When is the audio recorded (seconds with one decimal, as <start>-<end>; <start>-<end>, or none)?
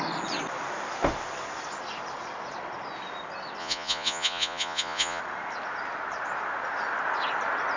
0.0-3.6; 5.2-7.8